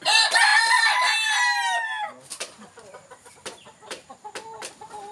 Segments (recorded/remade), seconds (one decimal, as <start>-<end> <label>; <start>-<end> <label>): 0.0-5.1 recorded